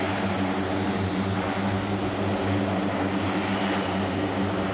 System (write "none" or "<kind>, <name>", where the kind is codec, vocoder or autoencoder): none